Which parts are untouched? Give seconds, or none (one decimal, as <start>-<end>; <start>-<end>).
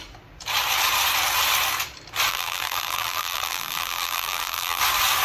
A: 0.0-2.3; 4.8-5.2